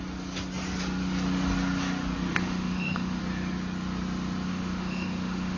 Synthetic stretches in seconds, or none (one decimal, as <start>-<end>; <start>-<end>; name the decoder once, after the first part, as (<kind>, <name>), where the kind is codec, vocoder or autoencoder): 2.3-3.2 (autoencoder, DAC-VAE); 4.5-5.6